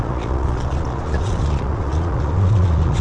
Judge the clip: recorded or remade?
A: remade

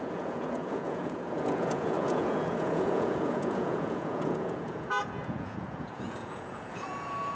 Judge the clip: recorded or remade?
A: remade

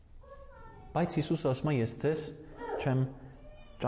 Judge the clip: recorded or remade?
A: recorded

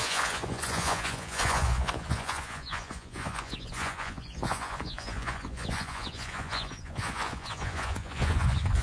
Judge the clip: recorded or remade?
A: remade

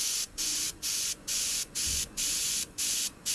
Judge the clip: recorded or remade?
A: remade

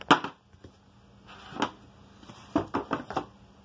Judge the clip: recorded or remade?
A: recorded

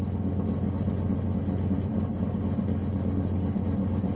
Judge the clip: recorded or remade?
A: recorded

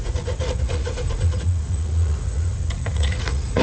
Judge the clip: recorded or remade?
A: remade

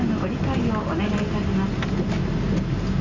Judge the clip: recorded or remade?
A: recorded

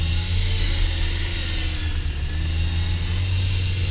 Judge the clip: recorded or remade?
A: recorded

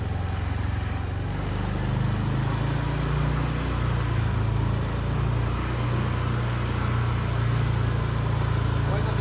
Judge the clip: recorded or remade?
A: recorded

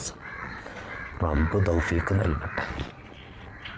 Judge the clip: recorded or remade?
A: remade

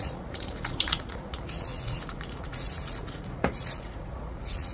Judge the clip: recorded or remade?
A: remade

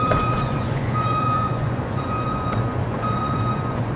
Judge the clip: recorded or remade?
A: remade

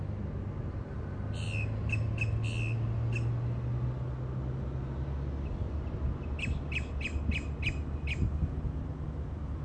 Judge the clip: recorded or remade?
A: recorded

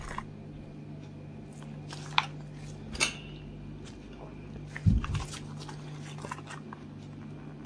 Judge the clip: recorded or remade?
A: recorded